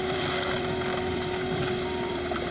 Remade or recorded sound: remade